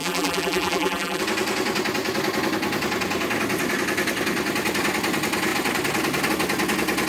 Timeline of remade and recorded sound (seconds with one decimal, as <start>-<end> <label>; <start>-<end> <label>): 0.0-1.2 remade; 1.2-7.1 recorded